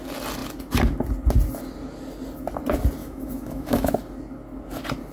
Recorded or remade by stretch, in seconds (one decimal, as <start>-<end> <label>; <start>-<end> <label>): 0.0-3.0 recorded; 3.0-3.9 remade; 3.9-5.1 recorded